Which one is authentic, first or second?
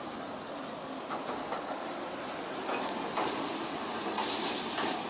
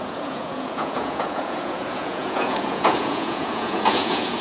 first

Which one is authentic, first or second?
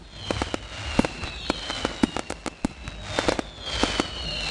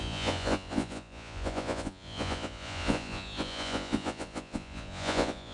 first